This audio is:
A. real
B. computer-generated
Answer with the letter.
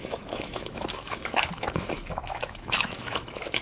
B